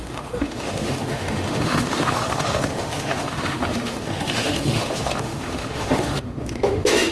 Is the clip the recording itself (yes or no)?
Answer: no